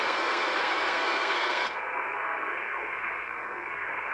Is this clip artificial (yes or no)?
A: yes